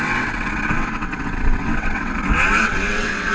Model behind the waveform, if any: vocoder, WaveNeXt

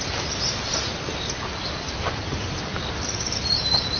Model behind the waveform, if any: none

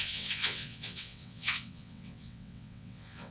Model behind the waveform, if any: vocoder, WaveNeXt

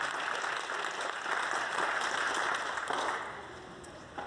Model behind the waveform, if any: none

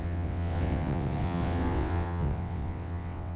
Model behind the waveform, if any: vocoder, WaveNeXt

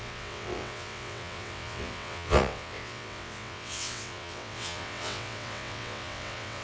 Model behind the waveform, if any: vocoder, WaveNeXt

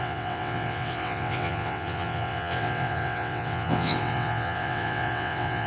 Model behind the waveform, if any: vocoder, WaveNeXt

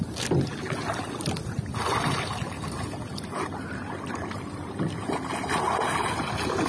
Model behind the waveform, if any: none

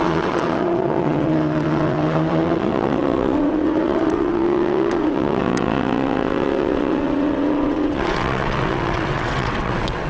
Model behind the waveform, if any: vocoder, WaveNeXt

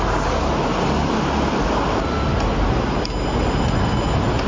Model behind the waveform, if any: none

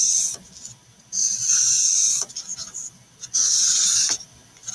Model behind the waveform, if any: none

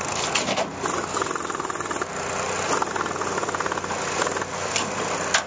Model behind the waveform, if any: none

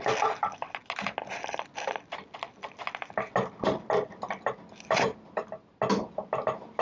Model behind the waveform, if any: none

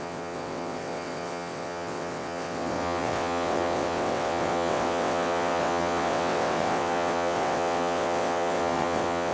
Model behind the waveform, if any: vocoder, WaveNeXt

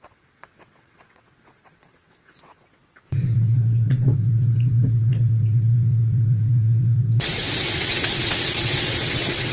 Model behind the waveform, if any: vocoder, WaveNeXt